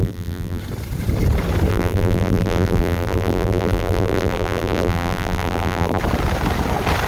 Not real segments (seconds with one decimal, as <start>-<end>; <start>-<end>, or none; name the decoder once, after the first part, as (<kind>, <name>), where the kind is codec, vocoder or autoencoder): 0.0-0.6 (vocoder, BigVGAN v2); 1.7-6.0